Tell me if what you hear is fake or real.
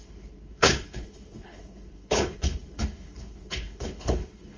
fake